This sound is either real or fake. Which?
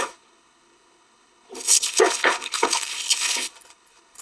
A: fake